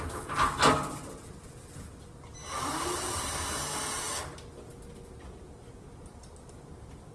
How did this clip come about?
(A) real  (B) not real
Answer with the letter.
A